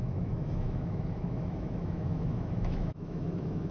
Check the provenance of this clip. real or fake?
fake